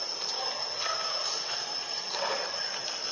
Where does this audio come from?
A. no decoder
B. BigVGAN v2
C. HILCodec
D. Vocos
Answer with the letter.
A